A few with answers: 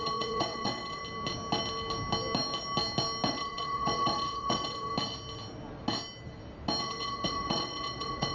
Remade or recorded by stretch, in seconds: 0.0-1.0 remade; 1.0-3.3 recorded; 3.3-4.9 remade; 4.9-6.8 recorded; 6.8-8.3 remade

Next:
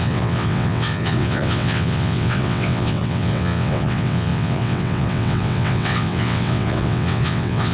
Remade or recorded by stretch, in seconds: 0.0-7.7 remade

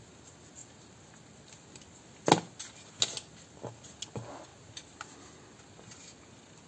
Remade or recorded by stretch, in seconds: 0.0-6.7 recorded

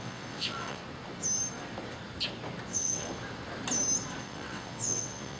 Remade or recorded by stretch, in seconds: 0.0-0.8 remade; 0.8-2.7 recorded; 2.7-3.1 remade; 3.1-4.2 recorded; 4.2-5.4 remade

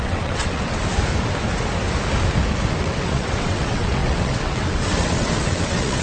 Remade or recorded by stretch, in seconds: 0.0-0.8 remade; 0.8-2.8 recorded; 2.8-6.0 remade

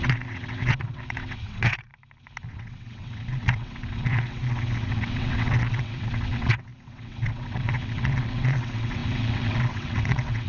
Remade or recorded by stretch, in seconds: 0.0-1.9 remade; 1.9-2.5 recorded; 2.5-10.5 remade

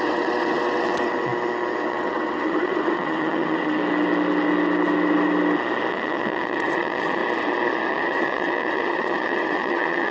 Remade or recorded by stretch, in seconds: 0.0-1.3 remade; 1.3-1.9 recorded; 1.9-3.8 remade; 3.8-5.9 recorded; 5.9-7.2 remade; 7.2-7.9 recorded; 7.9-10.1 remade

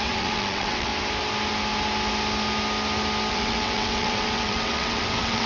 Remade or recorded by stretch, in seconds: 0.0-0.9 remade; 0.9-3.3 recorded; 3.3-5.5 remade